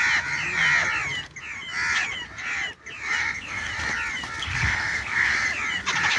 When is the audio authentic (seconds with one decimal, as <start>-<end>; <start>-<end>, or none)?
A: 0.0-3.2; 3.7-4.4; 5.3-6.2